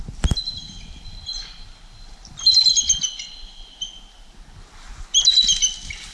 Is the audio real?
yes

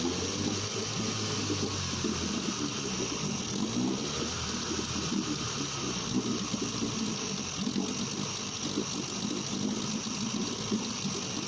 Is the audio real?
yes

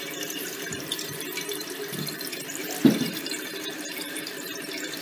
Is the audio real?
no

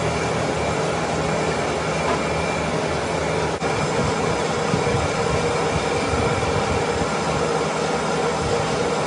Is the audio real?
yes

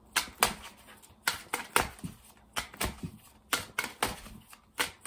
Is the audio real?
yes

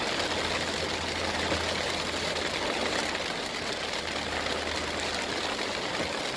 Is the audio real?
yes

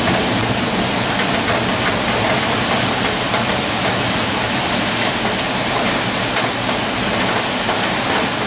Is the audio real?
yes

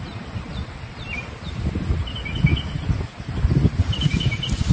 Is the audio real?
yes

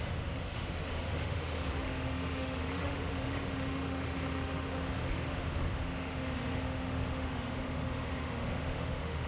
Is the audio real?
no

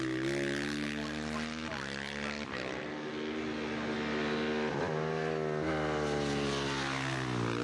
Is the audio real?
yes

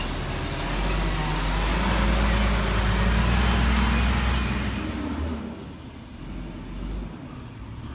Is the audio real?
yes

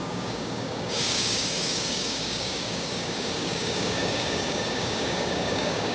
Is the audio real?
no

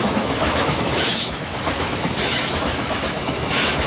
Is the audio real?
no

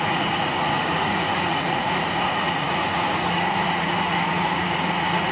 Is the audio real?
no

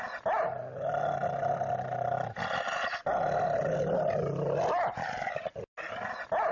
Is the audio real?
yes